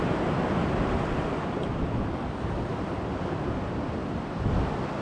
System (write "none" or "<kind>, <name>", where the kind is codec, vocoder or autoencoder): vocoder, BigVGAN v2